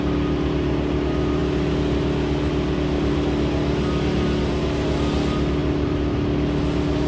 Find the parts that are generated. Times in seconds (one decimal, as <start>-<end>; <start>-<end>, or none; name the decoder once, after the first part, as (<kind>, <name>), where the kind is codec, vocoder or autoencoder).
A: none